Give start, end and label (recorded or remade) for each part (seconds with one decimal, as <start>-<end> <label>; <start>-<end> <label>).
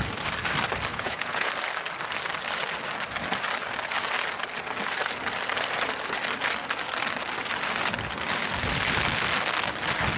0.0-0.9 recorded; 0.9-1.5 remade; 1.5-10.2 recorded